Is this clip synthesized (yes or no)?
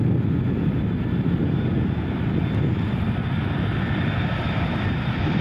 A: no